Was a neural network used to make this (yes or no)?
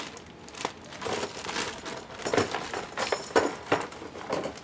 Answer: no